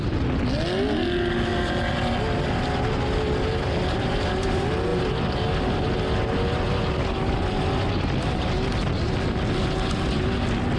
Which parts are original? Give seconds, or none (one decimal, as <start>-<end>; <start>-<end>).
0.0-10.8